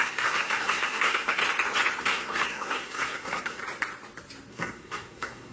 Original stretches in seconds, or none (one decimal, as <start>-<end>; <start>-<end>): 1.4-2.0; 3.6-4.5